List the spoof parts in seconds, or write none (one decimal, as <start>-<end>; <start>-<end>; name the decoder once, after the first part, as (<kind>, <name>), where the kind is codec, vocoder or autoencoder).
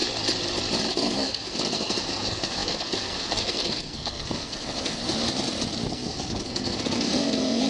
0.9-5.0 (codec, SNAC); 5.9-7.7